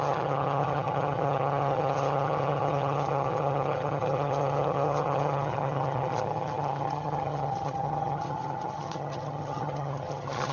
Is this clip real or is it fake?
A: fake